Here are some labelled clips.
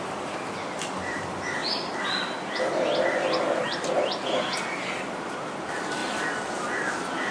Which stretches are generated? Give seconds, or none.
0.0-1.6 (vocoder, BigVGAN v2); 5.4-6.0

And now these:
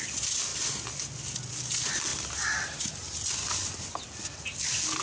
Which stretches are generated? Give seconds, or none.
none